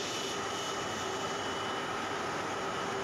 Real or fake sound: real